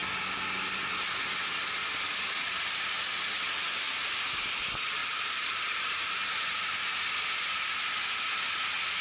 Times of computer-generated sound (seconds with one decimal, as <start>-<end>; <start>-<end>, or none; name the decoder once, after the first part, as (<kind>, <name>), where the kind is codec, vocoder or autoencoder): 5.0-6.3 (vocoder, BigVGAN v2)